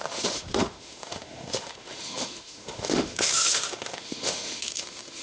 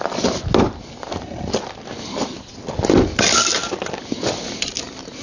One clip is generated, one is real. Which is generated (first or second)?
first